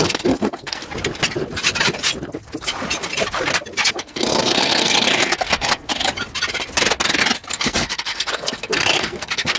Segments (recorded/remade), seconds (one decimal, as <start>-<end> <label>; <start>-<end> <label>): 0.0-0.8 remade; 0.8-3.9 recorded; 3.9-5.9 remade; 5.9-7.5 recorded; 7.5-9.6 remade